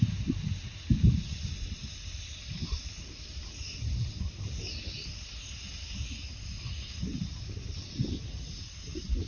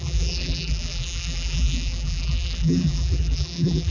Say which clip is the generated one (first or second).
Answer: second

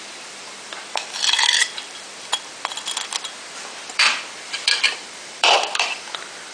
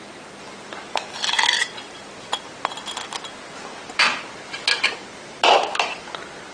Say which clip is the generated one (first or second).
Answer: first